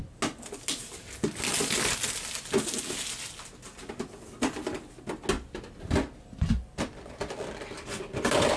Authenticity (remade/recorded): recorded